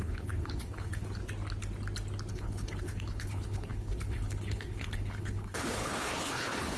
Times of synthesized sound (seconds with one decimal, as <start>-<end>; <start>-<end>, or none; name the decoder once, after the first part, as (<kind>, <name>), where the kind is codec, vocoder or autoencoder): 0.0-1.2 (codec, HILCodec); 2.3-6.8